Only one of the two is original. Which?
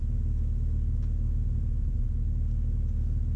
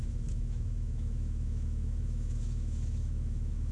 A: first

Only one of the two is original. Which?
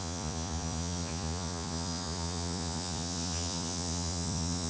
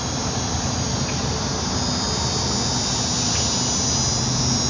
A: second